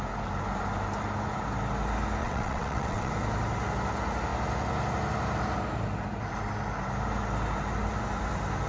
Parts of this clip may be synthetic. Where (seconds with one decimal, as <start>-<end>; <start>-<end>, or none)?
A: 2.2-3.1